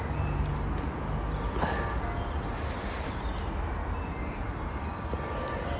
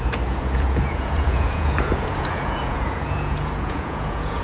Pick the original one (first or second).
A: first